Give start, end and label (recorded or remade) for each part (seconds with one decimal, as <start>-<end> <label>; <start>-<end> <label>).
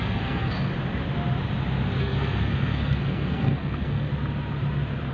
0.0-0.7 remade; 0.7-2.0 recorded; 2.0-4.1 remade; 4.1-5.1 recorded